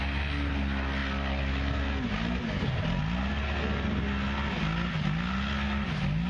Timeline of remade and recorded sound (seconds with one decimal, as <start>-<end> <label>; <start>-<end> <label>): 0.0-6.3 recorded